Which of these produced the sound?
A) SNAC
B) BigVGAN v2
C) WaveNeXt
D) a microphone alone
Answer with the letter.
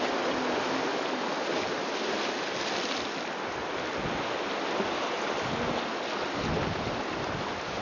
D